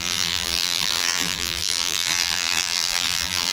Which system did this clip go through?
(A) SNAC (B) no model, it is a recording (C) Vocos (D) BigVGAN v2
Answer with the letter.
D